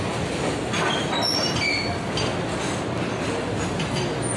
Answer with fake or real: real